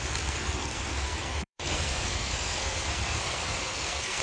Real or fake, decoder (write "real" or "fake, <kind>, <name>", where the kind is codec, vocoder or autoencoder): fake, codec, SNAC